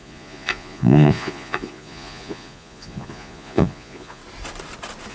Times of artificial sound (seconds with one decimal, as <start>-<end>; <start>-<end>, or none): 0.0-4.2